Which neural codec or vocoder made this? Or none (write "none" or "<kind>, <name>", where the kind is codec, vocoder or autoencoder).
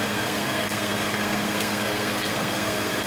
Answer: codec, SNAC